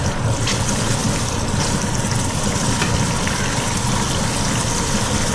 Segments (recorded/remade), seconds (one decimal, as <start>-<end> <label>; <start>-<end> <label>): 0.0-5.3 recorded